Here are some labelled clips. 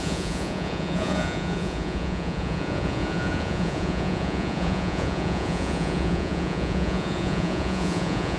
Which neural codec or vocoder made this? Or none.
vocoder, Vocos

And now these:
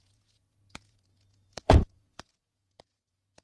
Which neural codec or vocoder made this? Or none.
vocoder, Vocos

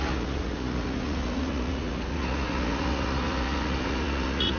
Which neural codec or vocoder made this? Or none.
vocoder, Vocos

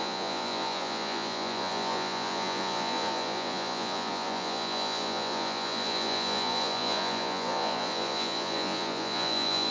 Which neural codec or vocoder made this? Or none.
vocoder, Vocos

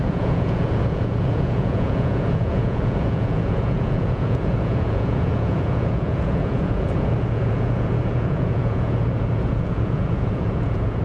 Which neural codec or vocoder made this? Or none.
vocoder, Vocos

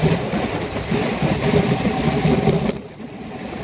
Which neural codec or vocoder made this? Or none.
none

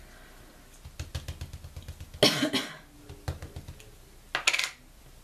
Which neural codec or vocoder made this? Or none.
none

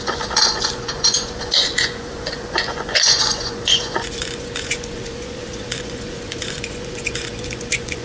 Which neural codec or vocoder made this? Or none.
vocoder, Vocos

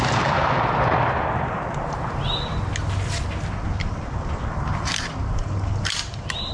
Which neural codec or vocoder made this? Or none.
none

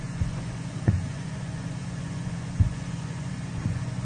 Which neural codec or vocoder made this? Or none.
vocoder, Vocos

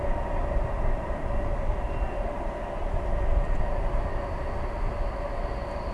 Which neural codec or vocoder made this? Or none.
none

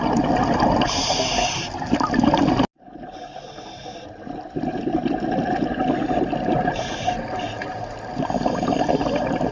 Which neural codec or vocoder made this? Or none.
none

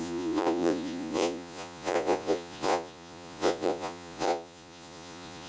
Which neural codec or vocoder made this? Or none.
vocoder, Vocos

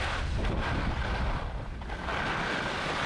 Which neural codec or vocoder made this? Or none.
none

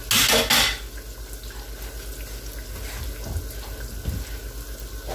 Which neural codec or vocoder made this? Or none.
none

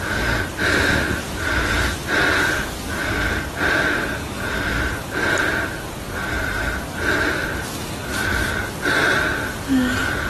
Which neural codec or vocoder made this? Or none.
none